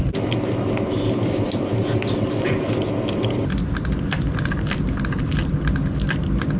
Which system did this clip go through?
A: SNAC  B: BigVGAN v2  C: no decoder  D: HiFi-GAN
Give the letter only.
C